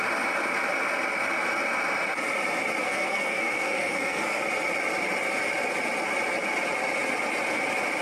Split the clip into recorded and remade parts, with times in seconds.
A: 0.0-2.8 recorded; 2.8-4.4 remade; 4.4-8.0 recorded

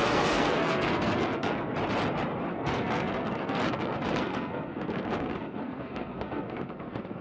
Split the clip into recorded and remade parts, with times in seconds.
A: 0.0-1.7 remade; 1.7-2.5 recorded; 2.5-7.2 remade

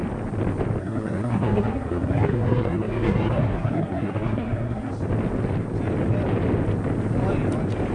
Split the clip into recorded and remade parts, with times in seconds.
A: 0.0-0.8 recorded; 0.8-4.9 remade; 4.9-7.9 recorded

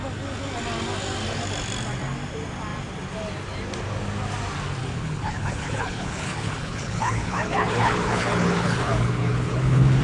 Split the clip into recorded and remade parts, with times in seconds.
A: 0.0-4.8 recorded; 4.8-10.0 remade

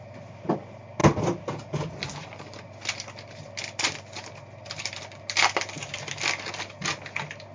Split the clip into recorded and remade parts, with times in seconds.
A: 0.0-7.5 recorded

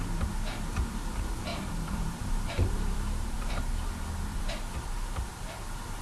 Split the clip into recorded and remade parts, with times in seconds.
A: 0.0-1.5 recorded; 1.5-3.6 remade; 3.6-4.3 recorded; 4.3-5.5 remade; 5.5-6.0 recorded

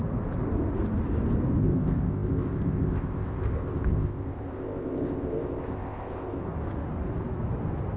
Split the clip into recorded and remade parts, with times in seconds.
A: 0.0-1.6 recorded; 1.6-6.4 remade; 6.4-8.0 recorded